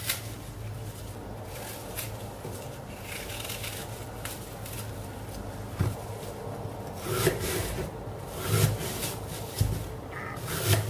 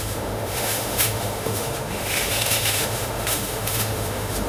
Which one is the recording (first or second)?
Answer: first